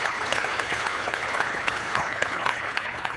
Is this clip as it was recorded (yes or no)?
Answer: no